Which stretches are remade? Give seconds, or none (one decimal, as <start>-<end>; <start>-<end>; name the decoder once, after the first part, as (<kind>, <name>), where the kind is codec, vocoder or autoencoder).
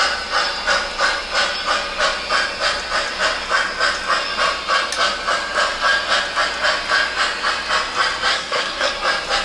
8.3-8.9 (codec, SNAC)